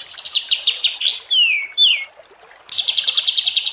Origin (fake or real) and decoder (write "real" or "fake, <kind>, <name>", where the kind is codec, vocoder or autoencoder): real